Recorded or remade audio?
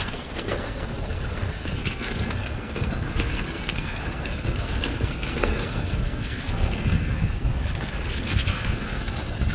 remade